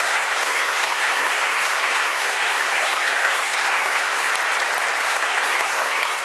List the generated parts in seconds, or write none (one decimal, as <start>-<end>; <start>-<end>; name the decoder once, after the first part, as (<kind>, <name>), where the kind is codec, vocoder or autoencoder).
0.0-4.3 (codec, SNAC); 5.0-6.2